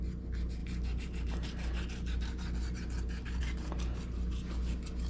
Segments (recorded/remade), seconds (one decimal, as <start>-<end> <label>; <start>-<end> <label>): 0.0-5.1 recorded

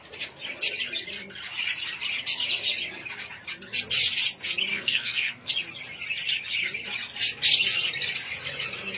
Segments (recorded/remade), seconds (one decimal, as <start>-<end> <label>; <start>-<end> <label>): 0.0-4.7 recorded; 4.7-5.5 remade; 5.5-9.0 recorded

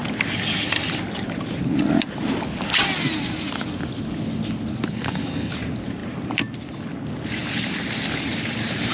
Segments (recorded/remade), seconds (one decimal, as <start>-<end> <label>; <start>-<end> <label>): 0.0-4.9 recorded; 4.9-5.5 remade; 5.5-8.9 recorded

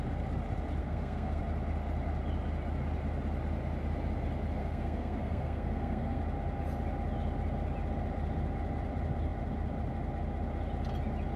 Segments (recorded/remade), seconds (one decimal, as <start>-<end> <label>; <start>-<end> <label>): 0.0-0.8 recorded; 0.8-1.4 remade; 1.4-4.6 recorded; 4.6-6.2 remade; 6.2-11.4 recorded

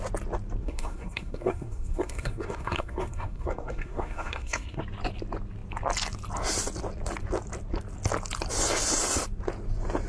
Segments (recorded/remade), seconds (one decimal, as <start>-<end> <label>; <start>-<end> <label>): 0.0-0.6 recorded; 0.6-4.8 remade; 4.8-10.1 recorded

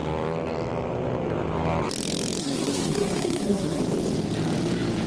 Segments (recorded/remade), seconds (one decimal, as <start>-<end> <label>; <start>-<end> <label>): 0.0-2.4 recorded; 2.4-3.8 remade; 3.8-5.1 recorded

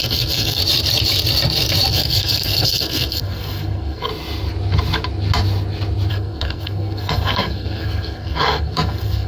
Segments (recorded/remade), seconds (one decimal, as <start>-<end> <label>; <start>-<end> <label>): 0.0-0.6 remade; 0.6-1.9 recorded; 1.9-4.1 remade; 4.1-6.1 recorded; 6.1-9.3 remade

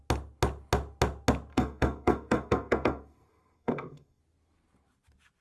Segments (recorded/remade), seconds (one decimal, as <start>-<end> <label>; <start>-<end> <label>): 0.0-1.5 recorded; 1.5-4.2 remade; 4.2-5.4 recorded